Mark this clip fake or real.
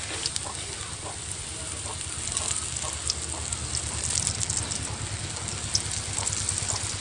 real